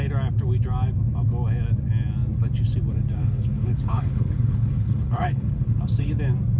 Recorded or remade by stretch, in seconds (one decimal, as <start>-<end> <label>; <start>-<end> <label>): 0.0-3.2 recorded; 3.2-6.1 remade; 6.1-6.6 recorded